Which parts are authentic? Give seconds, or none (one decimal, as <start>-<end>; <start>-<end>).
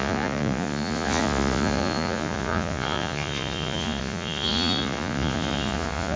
none